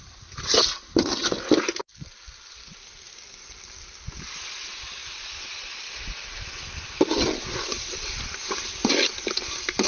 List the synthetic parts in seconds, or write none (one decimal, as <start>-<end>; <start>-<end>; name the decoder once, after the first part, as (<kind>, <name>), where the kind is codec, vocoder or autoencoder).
none